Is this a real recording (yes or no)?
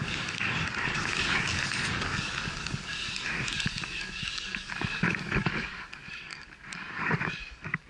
no